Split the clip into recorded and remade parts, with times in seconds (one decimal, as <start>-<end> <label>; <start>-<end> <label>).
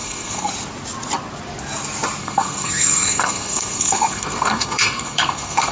0.0-0.5 remade; 0.5-2.2 recorded; 2.2-5.7 remade